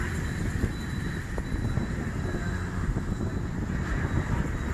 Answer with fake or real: real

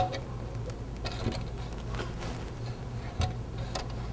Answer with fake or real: real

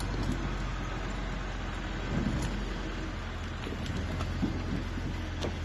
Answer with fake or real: real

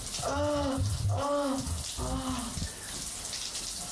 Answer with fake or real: real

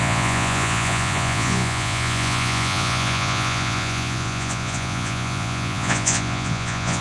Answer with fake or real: fake